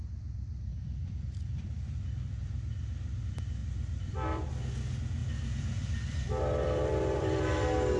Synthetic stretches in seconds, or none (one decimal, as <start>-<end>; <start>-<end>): 0.7-3.2; 3.6-4.5; 5.2-7.4